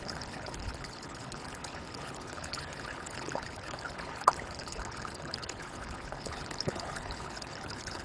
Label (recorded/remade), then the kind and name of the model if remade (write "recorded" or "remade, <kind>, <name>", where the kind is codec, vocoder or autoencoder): remade, codec, HILCodec